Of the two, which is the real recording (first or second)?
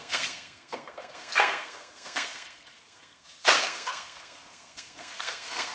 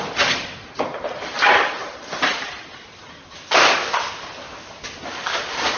second